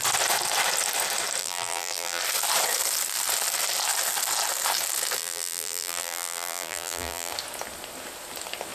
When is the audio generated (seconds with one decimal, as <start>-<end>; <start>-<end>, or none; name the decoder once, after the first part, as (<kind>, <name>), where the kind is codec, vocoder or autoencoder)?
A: 1.4-2.2 (vocoder, BigVGAN v2); 5.2-7.3